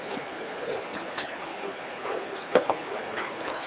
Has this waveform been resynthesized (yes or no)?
yes